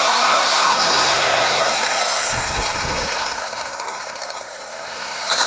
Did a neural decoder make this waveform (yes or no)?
yes